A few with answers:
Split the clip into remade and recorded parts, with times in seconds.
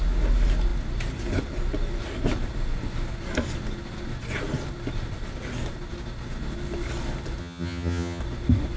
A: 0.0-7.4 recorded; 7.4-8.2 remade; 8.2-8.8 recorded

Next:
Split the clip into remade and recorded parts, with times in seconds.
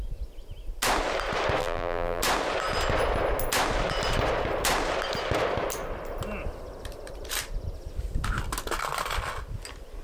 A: 0.0-1.6 recorded; 1.6-2.2 remade; 2.2-10.0 recorded